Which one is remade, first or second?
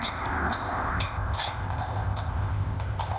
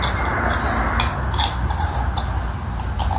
first